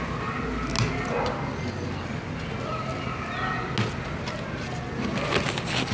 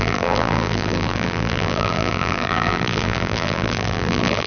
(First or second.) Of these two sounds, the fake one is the second